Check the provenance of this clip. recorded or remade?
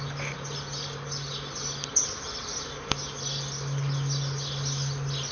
recorded